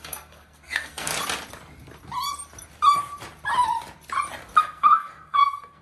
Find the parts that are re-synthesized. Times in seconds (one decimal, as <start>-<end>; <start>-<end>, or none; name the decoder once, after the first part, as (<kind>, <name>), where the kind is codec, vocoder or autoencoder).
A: 0.0-1.1 (codec, SNAC); 4.6-5.8